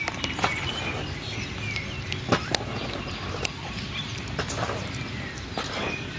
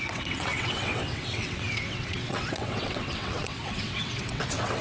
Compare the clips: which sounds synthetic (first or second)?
second